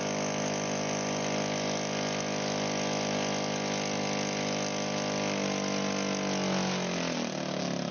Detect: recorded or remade recorded